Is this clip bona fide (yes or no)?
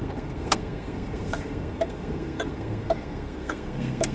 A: no